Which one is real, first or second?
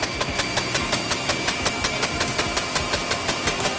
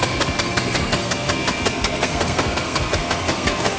first